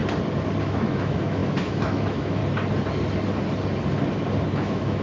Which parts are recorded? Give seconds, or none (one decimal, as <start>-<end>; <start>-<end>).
0.0-0.6; 2.4-4.5